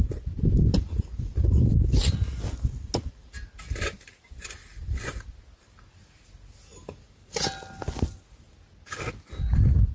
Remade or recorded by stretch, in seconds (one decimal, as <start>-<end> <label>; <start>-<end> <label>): 0.0-9.9 recorded